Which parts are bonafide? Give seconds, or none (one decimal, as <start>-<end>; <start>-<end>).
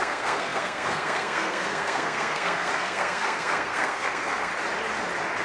4.5-5.4